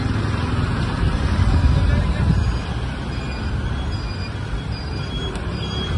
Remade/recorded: recorded